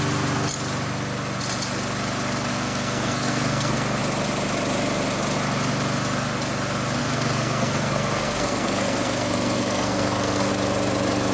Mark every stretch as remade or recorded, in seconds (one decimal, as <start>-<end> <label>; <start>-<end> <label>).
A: 0.0-2.5 recorded; 2.5-4.0 remade; 4.0-7.0 recorded; 7.0-10.5 remade; 10.5-11.3 recorded